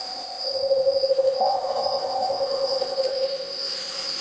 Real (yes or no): no